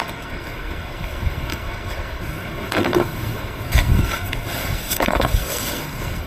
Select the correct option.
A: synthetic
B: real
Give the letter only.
A